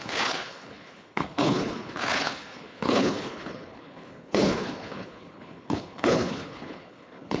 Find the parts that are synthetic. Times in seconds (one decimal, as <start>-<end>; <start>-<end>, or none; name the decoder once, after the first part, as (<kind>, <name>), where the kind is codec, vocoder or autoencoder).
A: 0.0-7.4 (codec, HILCodec)